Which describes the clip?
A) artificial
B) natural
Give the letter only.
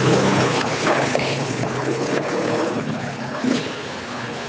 A